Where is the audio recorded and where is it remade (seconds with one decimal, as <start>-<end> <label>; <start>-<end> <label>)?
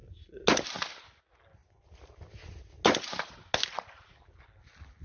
0.0-5.0 recorded